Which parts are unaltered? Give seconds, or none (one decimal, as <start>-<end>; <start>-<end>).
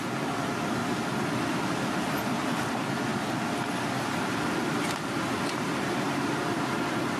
0.0-7.2